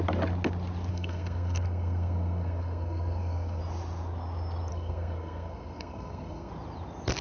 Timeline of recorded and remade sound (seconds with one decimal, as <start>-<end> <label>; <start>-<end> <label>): 0.0-0.9 recorded; 0.9-3.6 remade; 3.6-4.7 recorded; 4.7-6.5 remade; 6.5-7.2 recorded